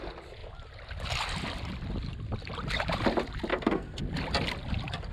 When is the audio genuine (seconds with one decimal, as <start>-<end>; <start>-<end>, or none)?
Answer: 0.0-3.5; 4.0-5.1